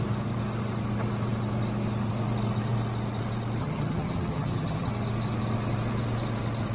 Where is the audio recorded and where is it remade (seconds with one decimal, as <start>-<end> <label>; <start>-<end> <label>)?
0.0-3.6 recorded; 3.6-4.9 remade; 4.9-6.7 recorded